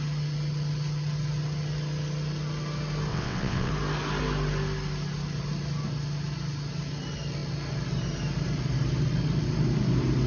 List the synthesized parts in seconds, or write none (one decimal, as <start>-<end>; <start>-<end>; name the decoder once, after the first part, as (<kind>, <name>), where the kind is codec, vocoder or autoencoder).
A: 3.1-3.7 (vocoder, WaveNeXt)